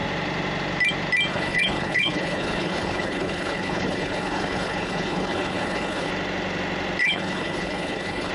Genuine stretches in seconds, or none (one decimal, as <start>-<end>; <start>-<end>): 0.0-1.3; 6.1-7.0